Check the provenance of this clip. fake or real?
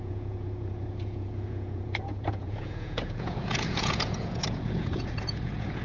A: fake